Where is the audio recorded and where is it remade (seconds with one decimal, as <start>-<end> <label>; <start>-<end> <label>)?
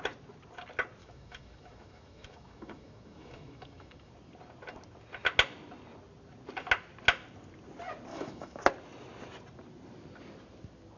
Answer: 0.0-1.0 recorded; 1.0-4.1 remade; 4.1-8.1 recorded; 8.1-8.6 remade; 8.6-11.0 recorded